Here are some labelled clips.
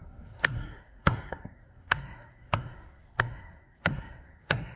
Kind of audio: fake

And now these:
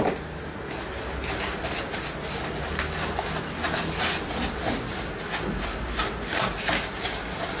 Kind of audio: real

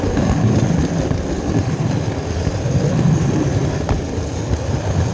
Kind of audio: real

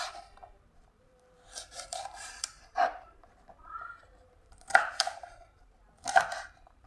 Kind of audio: fake